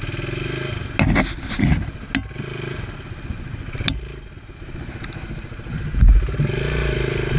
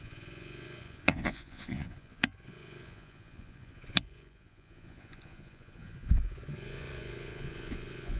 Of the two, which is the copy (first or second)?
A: second